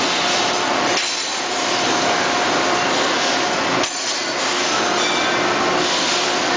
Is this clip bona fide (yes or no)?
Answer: yes